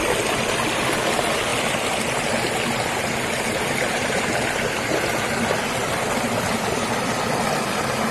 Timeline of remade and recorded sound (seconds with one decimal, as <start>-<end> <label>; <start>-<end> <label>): 0.0-8.1 recorded